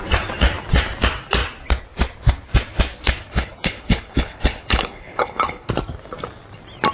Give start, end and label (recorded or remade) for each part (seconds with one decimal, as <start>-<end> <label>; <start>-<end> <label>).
0.0-3.3 recorded; 3.3-5.7 remade; 5.7-6.9 recorded

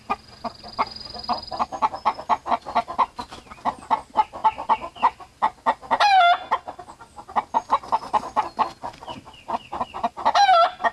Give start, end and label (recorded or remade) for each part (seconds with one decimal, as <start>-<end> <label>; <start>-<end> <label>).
0.0-10.9 recorded

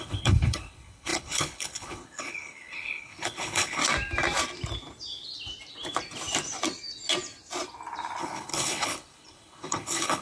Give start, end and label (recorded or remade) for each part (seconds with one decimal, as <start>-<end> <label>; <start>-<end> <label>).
0.0-3.8 remade; 3.8-8.2 recorded; 8.2-10.2 remade

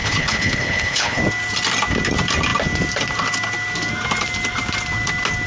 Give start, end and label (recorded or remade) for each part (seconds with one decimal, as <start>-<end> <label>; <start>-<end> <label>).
0.0-1.2 remade; 1.2-5.5 recorded

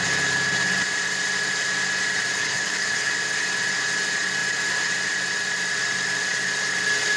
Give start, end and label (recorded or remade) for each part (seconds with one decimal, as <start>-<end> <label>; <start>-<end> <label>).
0.0-2.3 recorded; 2.3-3.1 remade; 3.1-7.2 recorded

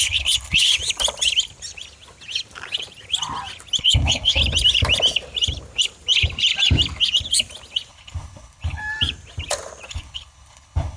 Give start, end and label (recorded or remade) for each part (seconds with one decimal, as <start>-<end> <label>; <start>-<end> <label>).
0.0-0.7 remade; 0.7-3.8 recorded; 3.8-4.4 remade; 4.4-7.9 recorded; 7.9-8.8 remade; 8.8-9.9 recorded; 9.9-11.0 remade

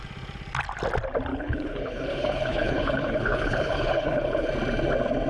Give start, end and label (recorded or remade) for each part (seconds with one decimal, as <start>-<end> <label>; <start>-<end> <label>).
0.0-1.3 recorded; 1.3-4.5 remade; 4.5-5.3 recorded

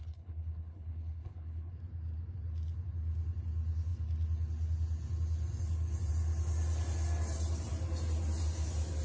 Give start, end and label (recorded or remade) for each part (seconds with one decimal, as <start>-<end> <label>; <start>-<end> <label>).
0.0-1.7 remade; 1.7-9.0 recorded